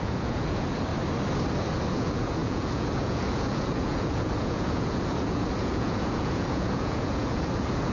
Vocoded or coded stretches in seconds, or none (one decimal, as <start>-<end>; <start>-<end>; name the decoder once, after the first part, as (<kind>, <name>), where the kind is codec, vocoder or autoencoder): 0.0-0.9 (vocoder, Vocos); 1.9-7.9